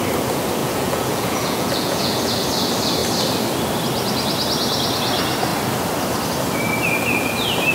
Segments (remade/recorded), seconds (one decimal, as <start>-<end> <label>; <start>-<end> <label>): 0.0-0.6 recorded; 0.6-2.3 remade; 2.3-7.7 recorded